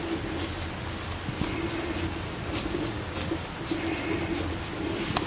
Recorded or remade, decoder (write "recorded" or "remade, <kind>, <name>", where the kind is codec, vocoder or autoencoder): recorded